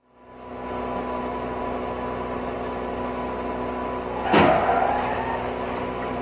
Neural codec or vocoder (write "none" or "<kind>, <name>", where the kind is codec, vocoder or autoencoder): none